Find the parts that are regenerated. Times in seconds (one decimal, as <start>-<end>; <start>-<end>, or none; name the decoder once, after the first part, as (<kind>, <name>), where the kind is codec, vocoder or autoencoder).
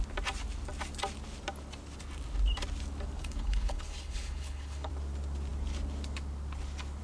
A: 3.2-4.9 (codec, HILCodec)